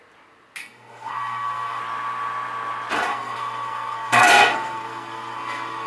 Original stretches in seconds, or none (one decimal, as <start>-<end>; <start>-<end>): 0.0-0.6; 1.8-3.1